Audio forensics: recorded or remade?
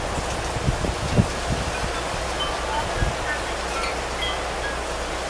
recorded